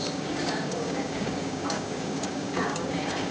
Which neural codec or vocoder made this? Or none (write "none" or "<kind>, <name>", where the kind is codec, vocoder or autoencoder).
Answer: codec, DAC